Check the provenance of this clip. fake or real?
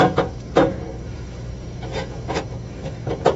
fake